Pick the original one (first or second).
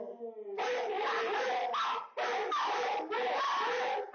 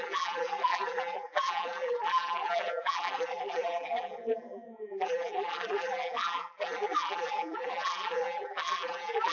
first